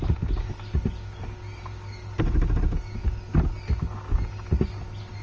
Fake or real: real